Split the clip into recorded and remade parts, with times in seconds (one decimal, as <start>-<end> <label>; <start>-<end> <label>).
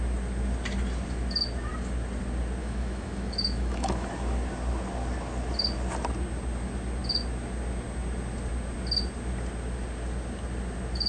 0.0-2.6 recorded; 2.6-4.1 remade; 4.1-11.1 recorded